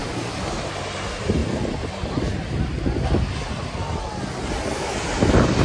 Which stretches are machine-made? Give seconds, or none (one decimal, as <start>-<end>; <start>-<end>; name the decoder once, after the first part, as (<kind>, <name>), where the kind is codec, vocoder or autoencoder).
0.0-0.6 (codec, DAC)